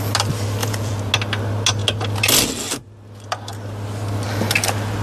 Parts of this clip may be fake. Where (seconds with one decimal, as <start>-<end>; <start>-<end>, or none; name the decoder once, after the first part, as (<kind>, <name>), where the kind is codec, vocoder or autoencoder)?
0.6-1.1 (vocoder, Vocos)